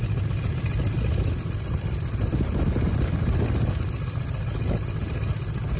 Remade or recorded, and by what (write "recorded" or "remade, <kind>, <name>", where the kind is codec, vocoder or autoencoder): recorded